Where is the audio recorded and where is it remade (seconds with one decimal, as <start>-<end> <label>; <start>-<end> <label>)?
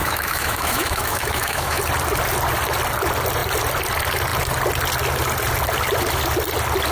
0.0-1.8 remade; 1.8-6.9 recorded